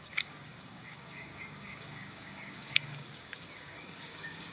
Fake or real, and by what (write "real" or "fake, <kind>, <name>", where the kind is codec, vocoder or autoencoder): fake, codec, DAC